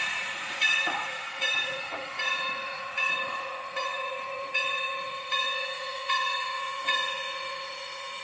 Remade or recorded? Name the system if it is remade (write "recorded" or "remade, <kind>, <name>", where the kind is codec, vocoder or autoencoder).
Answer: remade, vocoder, Vocos